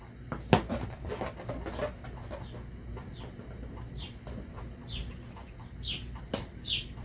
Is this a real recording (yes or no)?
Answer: yes